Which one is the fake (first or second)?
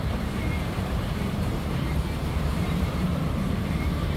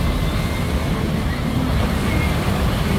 first